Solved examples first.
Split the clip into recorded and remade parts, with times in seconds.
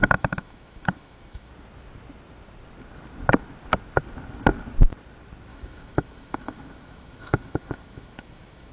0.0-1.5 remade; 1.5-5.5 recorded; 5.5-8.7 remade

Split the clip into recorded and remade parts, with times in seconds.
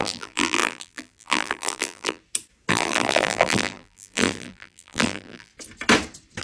0.0-2.2 remade; 2.2-2.7 recorded; 2.7-5.5 remade; 5.5-6.4 recorded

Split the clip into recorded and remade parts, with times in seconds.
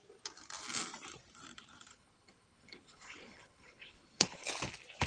0.0-1.9 recorded; 1.9-4.5 remade; 4.5-5.1 recorded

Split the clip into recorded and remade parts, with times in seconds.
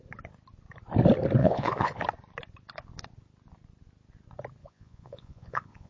0.0-1.4 recorded; 1.4-2.0 remade; 2.0-4.6 recorded; 4.6-5.9 remade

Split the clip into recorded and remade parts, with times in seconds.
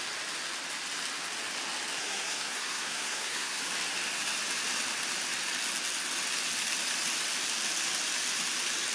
0.0-2.0 recorded; 2.0-3.6 remade; 3.6-8.9 recorded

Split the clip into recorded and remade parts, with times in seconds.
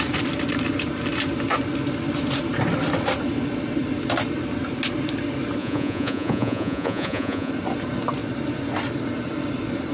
0.0-5.6 recorded; 5.6-7.5 remade; 7.5-9.9 recorded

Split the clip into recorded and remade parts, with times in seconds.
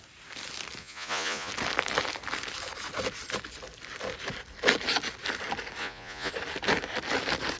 0.0-0.8 recorded; 0.8-1.5 remade; 1.5-5.8 recorded; 5.8-6.3 remade; 6.3-7.6 recorded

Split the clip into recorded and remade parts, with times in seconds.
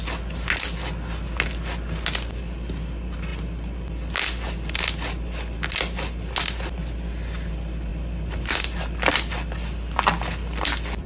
0.0-7.9 recorded; 7.9-11.1 remade